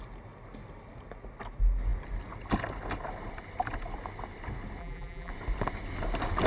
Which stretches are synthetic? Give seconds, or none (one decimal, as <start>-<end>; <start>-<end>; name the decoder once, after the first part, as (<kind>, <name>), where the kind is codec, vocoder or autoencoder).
4.8-5.3 (vocoder, BigVGAN v2)